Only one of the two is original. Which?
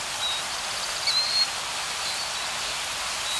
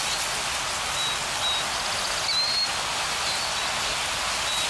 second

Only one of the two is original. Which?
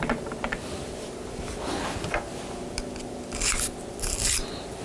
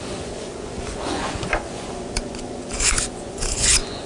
first